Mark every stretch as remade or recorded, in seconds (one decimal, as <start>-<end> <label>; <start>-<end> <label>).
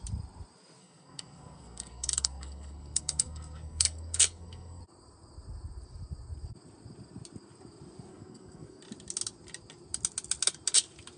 0.0-0.8 recorded; 0.8-4.8 remade; 4.8-8.1 recorded; 8.1-8.8 remade; 8.8-11.2 recorded